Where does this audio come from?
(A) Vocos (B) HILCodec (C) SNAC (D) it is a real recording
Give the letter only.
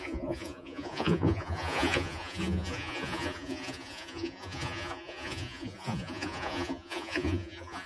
A